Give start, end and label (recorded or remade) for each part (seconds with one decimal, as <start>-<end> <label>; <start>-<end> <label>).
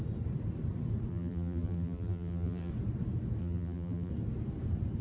0.0-1.1 recorded; 1.1-2.7 remade; 2.7-3.4 recorded; 3.4-4.1 remade; 4.1-5.0 recorded